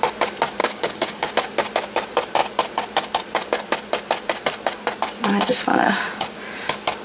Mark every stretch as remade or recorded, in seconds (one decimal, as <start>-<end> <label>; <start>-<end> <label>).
0.0-0.6 recorded; 0.6-1.3 remade; 1.3-5.7 recorded; 5.7-6.5 remade; 6.5-7.0 recorded

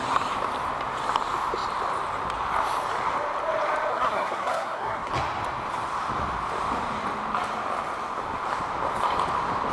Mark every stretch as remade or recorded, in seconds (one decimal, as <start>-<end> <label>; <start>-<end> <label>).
0.0-3.9 recorded; 3.9-5.1 remade; 5.1-9.7 recorded

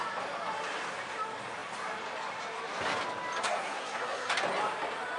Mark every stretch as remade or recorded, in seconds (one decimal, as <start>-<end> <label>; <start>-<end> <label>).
0.0-3.4 recorded; 3.4-4.3 remade; 4.3-5.2 recorded

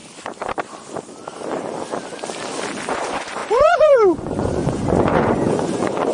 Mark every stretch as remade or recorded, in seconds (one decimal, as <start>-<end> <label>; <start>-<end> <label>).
0.0-2.9 recorded; 2.9-6.1 remade

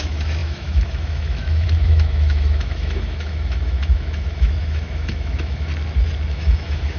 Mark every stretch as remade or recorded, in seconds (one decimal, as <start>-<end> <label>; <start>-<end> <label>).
0.0-5.7 remade; 5.7-6.3 recorded; 6.3-7.0 remade

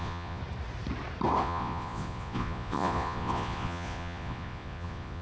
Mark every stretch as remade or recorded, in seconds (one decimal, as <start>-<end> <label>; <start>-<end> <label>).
0.0-0.4 remade; 0.4-1.4 recorded; 1.4-5.2 remade

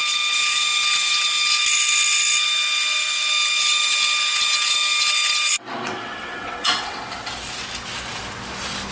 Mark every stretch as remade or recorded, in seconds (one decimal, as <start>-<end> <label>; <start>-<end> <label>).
0.0-5.5 recorded; 5.5-7.0 remade; 7.0-8.9 recorded